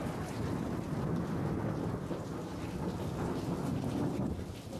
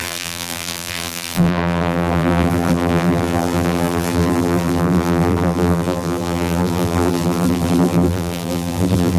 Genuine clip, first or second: first